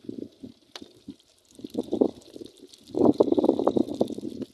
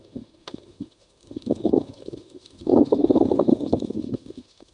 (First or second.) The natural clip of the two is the first